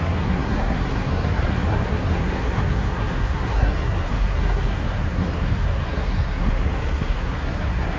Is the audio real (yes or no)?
no